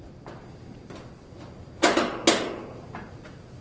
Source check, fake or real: real